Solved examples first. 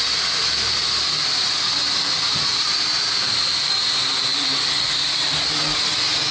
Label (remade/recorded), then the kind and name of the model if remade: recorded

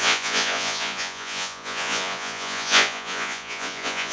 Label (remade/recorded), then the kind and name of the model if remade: remade, vocoder, Vocos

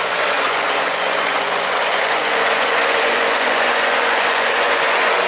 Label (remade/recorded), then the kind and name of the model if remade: remade, vocoder, Vocos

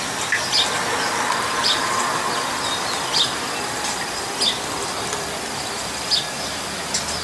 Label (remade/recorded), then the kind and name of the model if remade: recorded